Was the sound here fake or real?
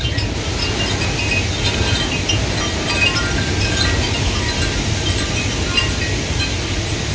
real